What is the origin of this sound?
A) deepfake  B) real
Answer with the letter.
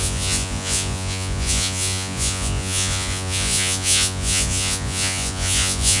A